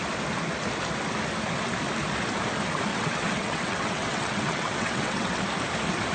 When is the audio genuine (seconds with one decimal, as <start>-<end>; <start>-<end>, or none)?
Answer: 0.0-2.9; 5.4-6.1